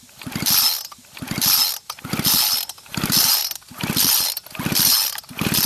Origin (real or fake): real